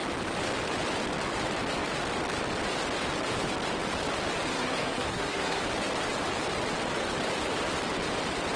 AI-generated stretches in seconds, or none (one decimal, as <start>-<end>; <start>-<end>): 4.5-5.6